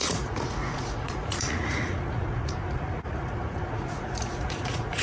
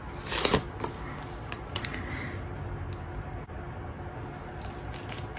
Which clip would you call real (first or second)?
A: second